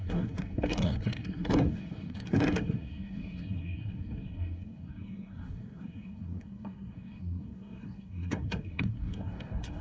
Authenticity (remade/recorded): remade